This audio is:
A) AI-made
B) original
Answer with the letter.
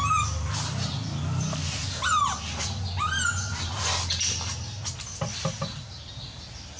B